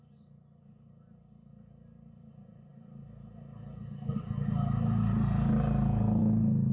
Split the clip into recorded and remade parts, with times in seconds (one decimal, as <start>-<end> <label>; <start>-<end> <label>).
0.0-6.7 recorded

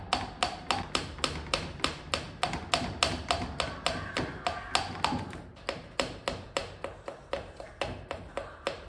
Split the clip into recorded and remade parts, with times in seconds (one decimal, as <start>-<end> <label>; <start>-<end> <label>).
0.0-8.9 recorded

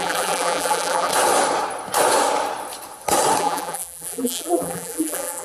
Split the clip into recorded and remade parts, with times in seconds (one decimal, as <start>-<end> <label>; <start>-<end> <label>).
0.0-1.1 remade; 1.1-3.4 recorded; 3.4-5.4 remade

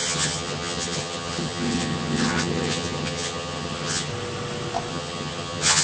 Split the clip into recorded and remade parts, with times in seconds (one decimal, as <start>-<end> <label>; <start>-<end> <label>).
0.0-4.1 remade; 4.1-4.9 recorded; 4.9-5.8 remade

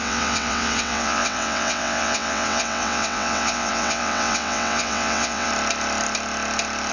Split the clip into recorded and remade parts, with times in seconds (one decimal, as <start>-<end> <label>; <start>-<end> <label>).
0.0-5.5 remade; 5.5-6.9 recorded

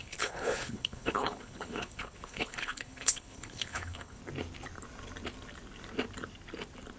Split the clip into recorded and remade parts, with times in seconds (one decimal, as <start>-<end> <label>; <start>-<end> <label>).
0.0-4.2 remade; 4.2-7.0 recorded

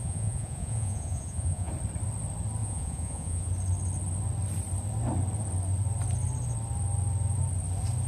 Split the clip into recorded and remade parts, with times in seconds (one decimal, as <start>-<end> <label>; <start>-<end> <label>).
0.0-1.7 remade; 1.7-2.6 recorded; 2.6-3.5 remade; 3.5-8.1 recorded